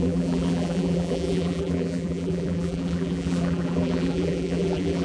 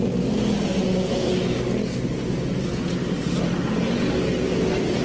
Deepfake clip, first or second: first